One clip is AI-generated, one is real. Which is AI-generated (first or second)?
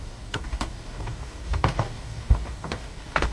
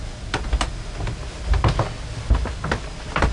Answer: first